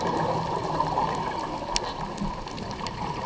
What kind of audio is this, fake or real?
real